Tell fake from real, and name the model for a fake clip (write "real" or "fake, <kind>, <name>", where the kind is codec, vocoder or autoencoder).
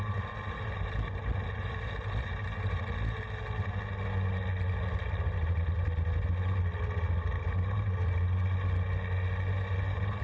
real